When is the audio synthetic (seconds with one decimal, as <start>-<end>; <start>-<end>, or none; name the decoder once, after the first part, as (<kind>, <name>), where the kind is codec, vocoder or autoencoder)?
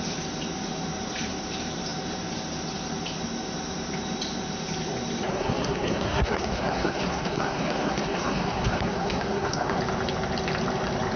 5.3-9.8 (codec, SNAC)